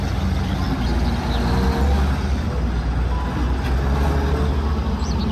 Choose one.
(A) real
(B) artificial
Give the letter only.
A